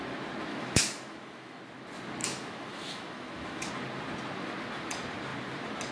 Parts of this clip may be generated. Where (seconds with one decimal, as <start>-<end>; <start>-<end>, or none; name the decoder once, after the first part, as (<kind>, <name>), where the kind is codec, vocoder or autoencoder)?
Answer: 0.5-1.6 (autoencoder, DAC-VAE); 2.2-3.7